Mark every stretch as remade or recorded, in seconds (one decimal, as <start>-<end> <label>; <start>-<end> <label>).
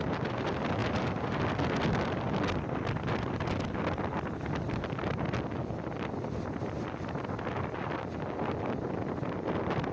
0.0-9.9 recorded